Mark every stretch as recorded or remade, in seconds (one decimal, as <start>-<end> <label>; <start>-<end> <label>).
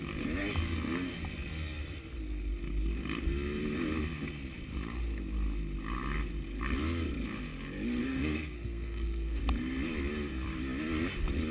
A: 0.0-8.0 recorded; 8.0-9.4 remade; 9.4-11.5 recorded